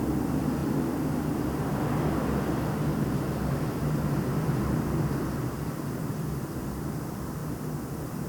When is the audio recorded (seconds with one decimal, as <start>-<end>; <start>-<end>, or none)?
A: 0.6-3.5; 7.4-7.9